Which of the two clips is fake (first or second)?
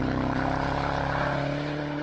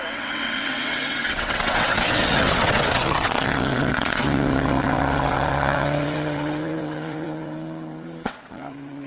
second